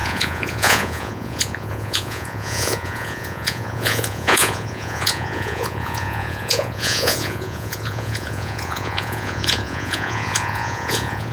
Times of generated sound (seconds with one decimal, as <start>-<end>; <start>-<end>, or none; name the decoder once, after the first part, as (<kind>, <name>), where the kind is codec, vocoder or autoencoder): 0.0-11.3 (vocoder, Vocos)